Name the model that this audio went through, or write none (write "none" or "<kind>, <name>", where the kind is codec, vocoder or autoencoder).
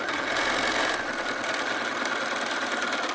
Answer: none